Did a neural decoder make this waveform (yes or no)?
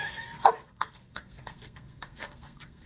yes